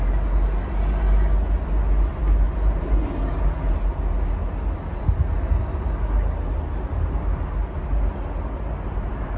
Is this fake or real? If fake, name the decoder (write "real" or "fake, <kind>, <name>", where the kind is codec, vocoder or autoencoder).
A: real